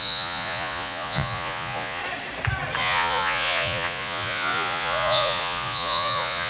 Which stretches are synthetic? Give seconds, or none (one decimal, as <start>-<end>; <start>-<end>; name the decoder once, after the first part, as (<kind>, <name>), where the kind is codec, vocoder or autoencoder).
0.0-2.0 (vocoder, Vocos); 2.8-6.5